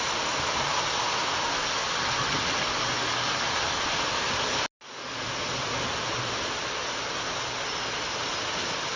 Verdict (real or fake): real